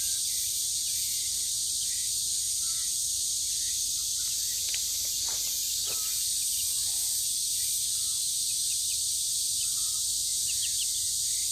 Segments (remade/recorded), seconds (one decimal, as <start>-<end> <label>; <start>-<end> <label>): 0.0-0.7 remade; 0.7-2.7 recorded; 2.7-10.3 remade; 10.3-11.5 recorded